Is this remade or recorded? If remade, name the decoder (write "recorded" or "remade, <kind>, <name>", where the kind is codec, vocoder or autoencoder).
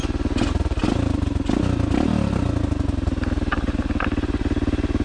recorded